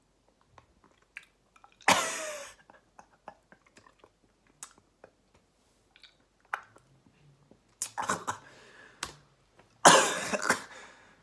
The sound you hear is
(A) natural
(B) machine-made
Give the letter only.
A